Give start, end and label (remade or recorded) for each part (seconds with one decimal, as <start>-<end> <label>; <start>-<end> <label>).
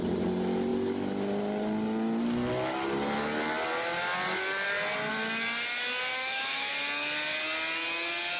0.0-6.1 recorded; 6.1-6.7 remade; 6.7-8.4 recorded